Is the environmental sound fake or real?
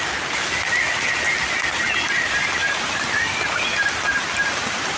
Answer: real